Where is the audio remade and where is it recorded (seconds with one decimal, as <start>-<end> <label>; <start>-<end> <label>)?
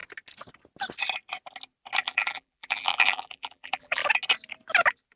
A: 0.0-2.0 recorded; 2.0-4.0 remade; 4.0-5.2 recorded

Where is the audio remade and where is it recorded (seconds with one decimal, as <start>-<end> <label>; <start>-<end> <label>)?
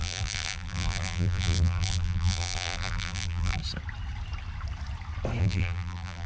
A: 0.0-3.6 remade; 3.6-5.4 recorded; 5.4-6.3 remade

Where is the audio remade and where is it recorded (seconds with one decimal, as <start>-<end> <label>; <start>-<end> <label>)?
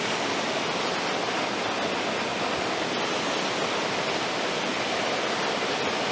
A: 0.0-6.1 recorded